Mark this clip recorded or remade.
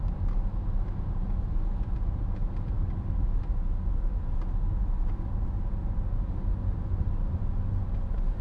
recorded